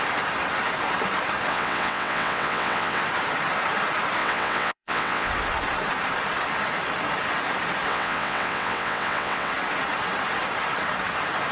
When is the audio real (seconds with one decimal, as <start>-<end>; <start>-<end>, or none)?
0.0-1.5; 3.0-4.2; 5.3-7.9; 9.5-11.5